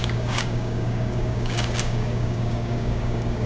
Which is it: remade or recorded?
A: remade